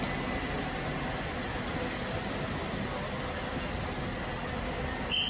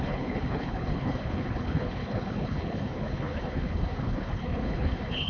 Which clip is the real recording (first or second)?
first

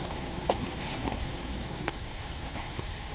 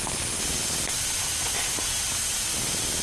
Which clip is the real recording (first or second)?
second